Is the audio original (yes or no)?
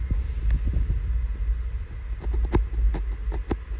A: yes